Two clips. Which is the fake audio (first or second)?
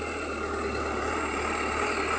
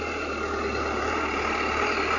second